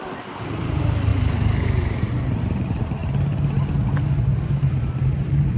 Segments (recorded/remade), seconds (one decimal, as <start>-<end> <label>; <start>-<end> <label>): 0.0-3.0 remade; 3.0-4.4 recorded; 4.4-5.6 remade

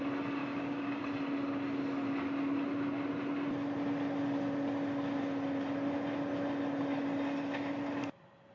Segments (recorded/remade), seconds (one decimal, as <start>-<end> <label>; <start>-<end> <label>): 0.0-0.4 recorded; 0.4-1.0 remade; 1.0-8.5 recorded

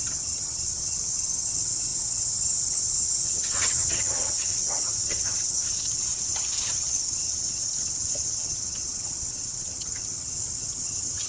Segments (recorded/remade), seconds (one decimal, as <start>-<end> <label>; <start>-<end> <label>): 0.0-11.3 remade

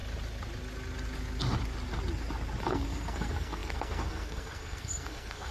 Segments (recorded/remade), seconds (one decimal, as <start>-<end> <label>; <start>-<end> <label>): 0.0-2.6 recorded; 2.6-5.5 remade

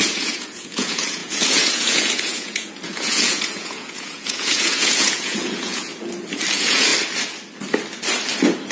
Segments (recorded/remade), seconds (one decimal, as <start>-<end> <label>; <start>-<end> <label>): 0.0-5.9 remade; 5.9-6.5 recorded; 6.5-6.9 remade; 6.9-8.7 recorded

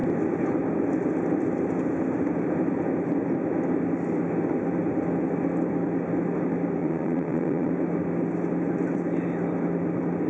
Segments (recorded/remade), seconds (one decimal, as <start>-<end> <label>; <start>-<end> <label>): 0.0-6.8 recorded; 6.8-7.7 remade; 7.7-10.3 recorded